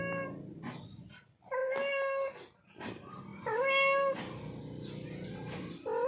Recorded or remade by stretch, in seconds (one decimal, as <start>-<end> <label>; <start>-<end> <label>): 0.0-6.1 recorded

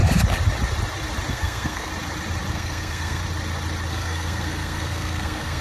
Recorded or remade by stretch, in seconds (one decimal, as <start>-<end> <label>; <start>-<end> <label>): 0.0-1.3 recorded; 1.3-1.9 remade; 1.9-2.5 recorded; 2.5-3.2 remade; 3.2-3.9 recorded; 3.9-5.6 remade